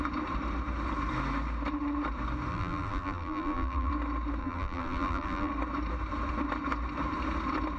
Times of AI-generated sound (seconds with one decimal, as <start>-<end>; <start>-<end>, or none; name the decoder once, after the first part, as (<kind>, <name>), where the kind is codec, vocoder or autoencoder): 2.5-3.9 (vocoder, BigVGAN v2); 4.4-5.5